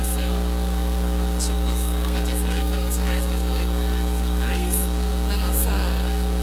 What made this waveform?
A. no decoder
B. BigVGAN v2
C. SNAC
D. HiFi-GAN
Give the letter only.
C